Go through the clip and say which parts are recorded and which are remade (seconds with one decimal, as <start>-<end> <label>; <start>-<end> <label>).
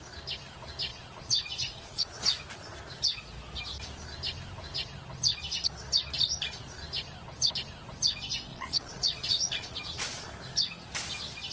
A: 0.0-0.9 recorded; 0.9-2.2 remade; 2.2-8.5 recorded; 8.5-10.3 remade; 10.3-11.5 recorded